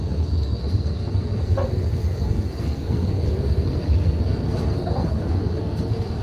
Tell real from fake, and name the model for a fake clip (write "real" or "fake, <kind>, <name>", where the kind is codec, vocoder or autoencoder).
fake, codec, SNAC